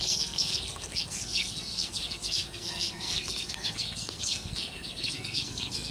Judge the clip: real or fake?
fake